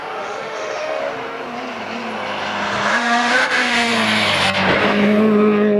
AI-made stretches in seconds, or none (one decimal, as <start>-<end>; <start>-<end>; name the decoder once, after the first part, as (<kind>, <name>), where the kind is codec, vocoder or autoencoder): 0.0-1.0 (autoencoder, DAC-VAE); 2.9-3.9